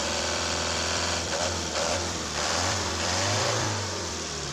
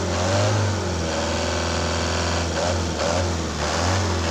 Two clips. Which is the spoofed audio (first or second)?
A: first